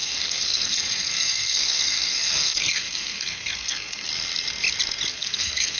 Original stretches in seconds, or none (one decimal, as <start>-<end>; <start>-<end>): 4.1-5.1